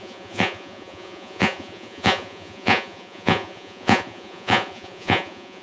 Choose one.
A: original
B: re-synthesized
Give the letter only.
B